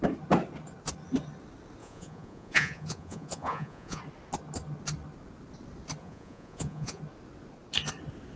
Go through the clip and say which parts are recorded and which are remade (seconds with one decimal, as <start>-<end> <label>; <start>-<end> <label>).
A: 0.0-1.8 recorded; 1.8-4.0 remade; 4.0-6.0 recorded; 6.0-7.0 remade; 7.0-8.4 recorded